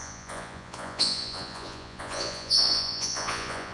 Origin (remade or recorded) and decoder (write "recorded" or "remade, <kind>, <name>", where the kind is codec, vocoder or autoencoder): remade, vocoder, Vocos